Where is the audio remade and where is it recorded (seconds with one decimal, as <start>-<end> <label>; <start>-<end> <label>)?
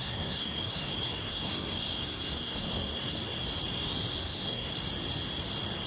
0.0-3.2 remade; 3.2-4.2 recorded; 4.2-4.7 remade; 4.7-5.9 recorded